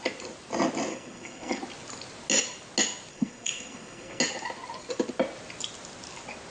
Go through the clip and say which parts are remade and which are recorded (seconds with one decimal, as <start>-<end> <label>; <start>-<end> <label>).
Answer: 0.0-0.9 recorded; 0.9-1.6 remade; 1.6-3.1 recorded; 3.1-4.2 remade; 4.2-6.5 recorded